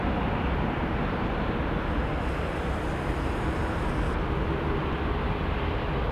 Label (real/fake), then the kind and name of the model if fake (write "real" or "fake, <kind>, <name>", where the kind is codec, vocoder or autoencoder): real